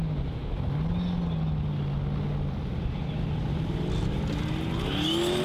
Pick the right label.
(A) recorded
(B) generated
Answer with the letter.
A